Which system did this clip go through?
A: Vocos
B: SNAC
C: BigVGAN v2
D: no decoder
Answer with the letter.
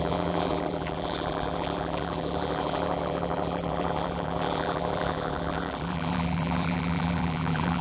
C